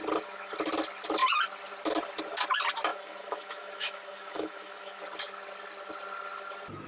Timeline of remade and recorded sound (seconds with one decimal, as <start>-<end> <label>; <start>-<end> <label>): 0.0-2.9 recorded; 2.9-5.0 remade; 5.0-6.9 recorded